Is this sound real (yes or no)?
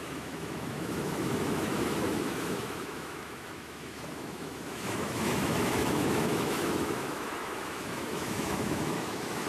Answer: no